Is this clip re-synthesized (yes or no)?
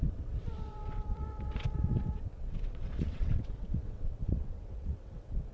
yes